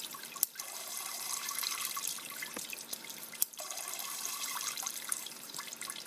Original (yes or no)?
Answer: no